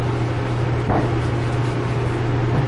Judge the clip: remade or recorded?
recorded